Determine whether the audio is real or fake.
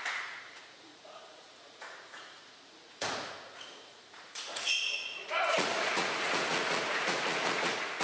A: fake